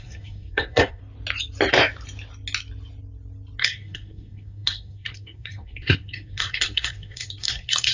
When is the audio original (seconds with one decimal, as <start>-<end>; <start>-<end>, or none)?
1.0-3.6